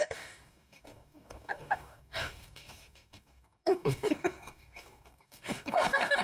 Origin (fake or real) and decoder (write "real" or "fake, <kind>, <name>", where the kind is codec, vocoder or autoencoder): fake, codec, DAC